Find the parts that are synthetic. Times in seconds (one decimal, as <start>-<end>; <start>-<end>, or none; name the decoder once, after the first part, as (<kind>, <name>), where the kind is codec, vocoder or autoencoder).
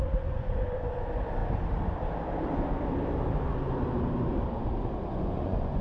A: 0.0-0.9 (vocoder, Vocos); 5.1-5.8